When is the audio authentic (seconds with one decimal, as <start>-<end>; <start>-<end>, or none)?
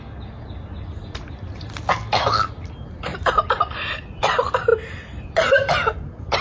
0.0-6.4